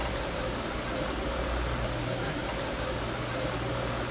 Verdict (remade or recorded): recorded